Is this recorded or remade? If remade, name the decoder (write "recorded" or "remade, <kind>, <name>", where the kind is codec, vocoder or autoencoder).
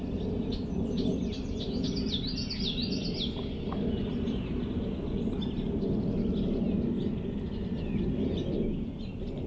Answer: recorded